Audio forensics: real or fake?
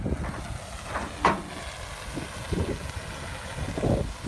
real